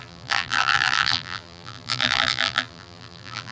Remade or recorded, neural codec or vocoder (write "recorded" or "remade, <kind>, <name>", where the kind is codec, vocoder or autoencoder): remade, vocoder, BigVGAN v2